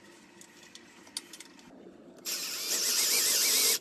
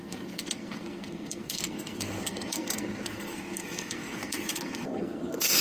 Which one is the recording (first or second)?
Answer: first